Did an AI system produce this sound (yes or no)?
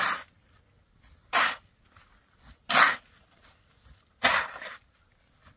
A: no